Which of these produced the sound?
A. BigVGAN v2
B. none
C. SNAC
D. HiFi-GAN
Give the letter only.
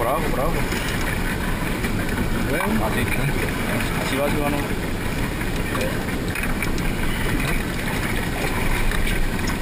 B